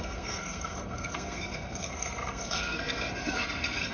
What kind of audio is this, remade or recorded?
remade